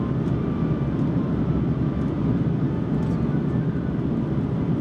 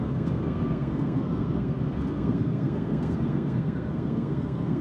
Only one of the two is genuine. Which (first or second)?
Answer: first